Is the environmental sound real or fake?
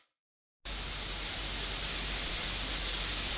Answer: real